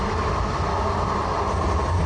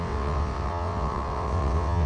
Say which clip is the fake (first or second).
second